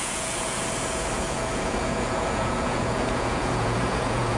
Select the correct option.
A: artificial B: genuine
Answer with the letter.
A